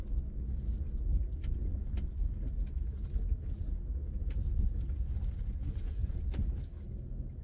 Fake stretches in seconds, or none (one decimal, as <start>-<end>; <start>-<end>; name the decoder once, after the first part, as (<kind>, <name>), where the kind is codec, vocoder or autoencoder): 5.6-6.2 (vocoder, Vocos)